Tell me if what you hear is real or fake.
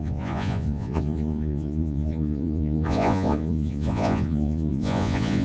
fake